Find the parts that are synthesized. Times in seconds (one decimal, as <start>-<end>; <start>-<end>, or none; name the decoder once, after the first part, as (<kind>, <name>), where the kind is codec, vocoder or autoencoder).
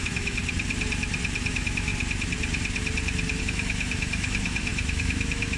0.0-0.4 (autoencoder, DAC-VAE); 1.5-1.9; 3.4-5.6